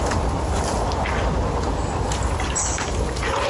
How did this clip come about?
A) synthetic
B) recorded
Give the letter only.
B